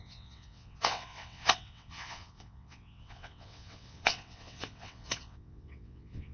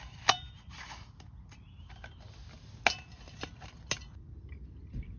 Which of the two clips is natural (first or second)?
second